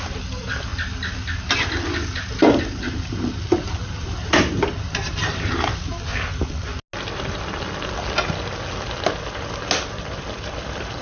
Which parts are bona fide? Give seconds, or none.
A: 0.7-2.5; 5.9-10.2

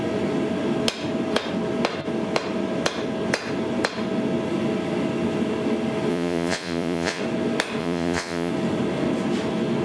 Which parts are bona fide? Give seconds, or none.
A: 0.0-6.1; 7.2-7.8; 8.5-9.8